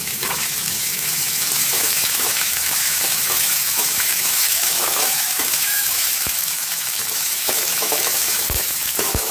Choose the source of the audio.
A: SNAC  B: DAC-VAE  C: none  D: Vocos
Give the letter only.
B